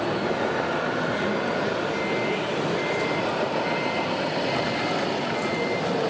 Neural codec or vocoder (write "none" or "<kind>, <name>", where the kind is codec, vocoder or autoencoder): none